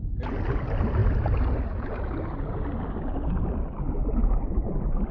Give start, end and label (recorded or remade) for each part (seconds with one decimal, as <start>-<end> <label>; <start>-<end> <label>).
0.0-5.1 recorded